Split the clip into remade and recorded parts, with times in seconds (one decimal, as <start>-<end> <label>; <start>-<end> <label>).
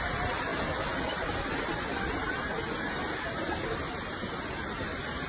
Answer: 0.0-5.3 recorded